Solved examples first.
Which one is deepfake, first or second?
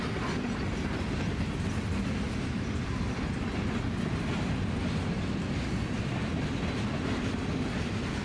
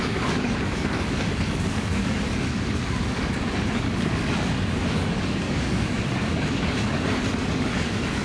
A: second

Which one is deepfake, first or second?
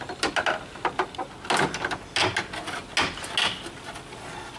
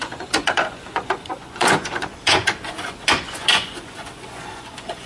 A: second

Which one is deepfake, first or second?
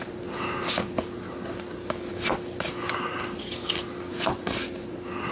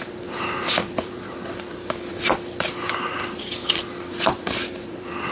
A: second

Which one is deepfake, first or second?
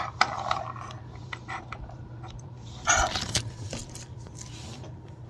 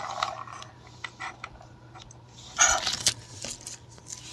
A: first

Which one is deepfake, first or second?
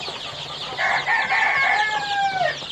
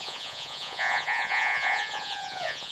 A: second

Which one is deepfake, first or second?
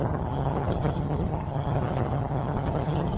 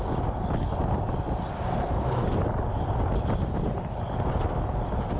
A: first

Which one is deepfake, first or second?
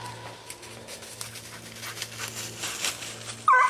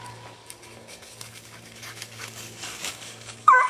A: second